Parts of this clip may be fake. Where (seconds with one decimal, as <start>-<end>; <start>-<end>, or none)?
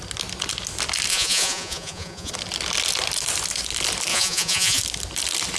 1.1-2.3; 4.1-4.8